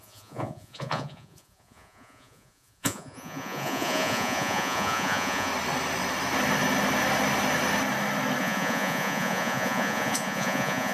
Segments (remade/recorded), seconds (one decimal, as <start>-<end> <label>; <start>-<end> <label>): 0.0-5.5 remade; 5.5-8.4 recorded; 8.4-10.9 remade